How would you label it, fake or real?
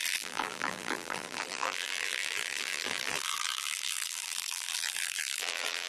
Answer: fake